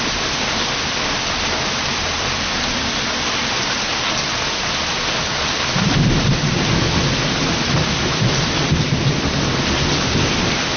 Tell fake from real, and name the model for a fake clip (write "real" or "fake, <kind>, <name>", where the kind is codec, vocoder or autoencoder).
real